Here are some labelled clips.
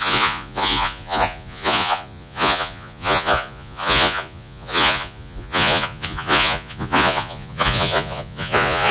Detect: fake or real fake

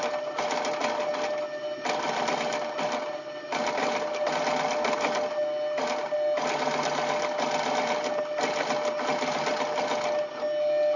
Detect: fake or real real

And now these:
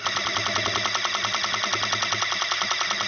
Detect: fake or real real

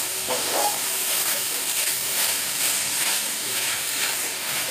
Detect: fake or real fake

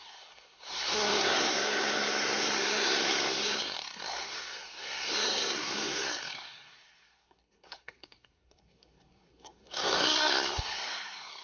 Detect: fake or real fake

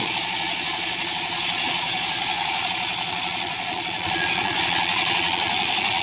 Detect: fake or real fake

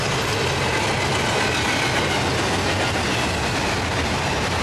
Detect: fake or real real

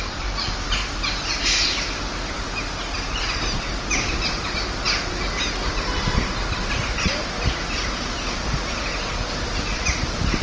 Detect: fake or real real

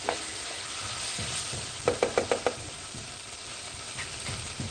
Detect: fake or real real